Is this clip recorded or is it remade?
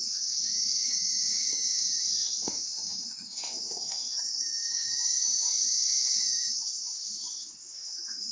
remade